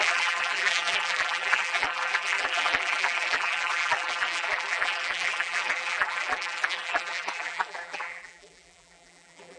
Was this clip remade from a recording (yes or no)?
yes